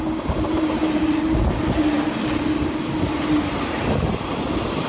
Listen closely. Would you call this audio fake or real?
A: real